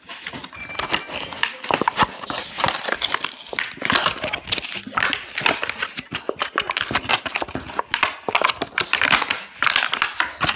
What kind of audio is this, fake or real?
real